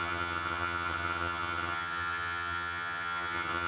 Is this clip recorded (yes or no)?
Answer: no